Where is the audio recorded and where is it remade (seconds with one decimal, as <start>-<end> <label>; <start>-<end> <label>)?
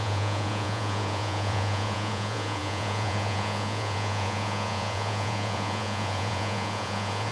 0.0-7.3 remade